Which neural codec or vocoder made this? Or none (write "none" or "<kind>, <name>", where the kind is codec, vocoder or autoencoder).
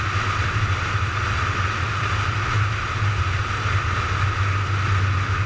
none